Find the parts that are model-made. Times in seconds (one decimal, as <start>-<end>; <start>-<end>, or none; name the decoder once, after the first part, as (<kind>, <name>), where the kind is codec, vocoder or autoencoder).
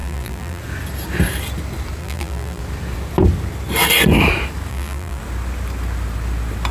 0.0-0.6 (vocoder, BigVGAN v2); 2.0-2.6; 4.7-5.2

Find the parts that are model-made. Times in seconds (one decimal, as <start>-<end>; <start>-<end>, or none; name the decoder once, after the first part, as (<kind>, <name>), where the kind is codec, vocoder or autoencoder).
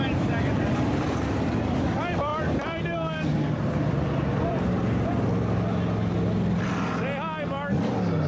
0.0-2.3 (vocoder, BigVGAN v2); 2.8-4.8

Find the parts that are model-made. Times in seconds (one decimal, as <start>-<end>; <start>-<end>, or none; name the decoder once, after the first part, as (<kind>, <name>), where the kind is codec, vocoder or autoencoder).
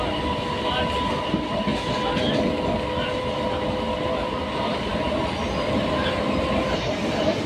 none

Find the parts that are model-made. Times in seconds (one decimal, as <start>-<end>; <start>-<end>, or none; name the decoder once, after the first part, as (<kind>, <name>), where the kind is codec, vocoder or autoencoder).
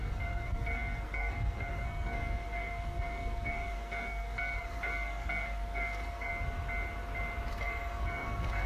0.0-6.3 (codec, SNAC); 7.5-8.7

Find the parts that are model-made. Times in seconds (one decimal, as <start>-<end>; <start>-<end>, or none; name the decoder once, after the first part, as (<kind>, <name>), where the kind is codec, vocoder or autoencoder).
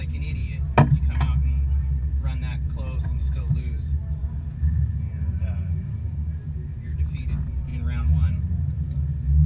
3.2-3.7 (autoencoder, DAC-VAE)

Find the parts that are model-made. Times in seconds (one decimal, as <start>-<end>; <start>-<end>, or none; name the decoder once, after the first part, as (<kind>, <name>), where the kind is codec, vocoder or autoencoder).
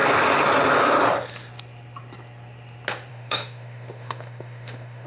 3.1-5.1 (autoencoder, DAC-VAE)